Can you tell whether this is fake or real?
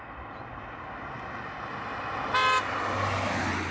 real